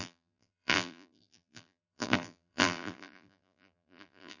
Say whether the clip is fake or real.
fake